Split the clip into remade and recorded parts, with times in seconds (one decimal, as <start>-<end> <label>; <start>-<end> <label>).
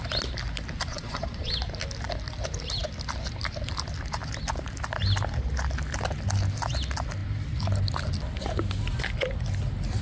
0.0-0.9 recorded; 0.9-1.5 remade; 1.5-10.0 recorded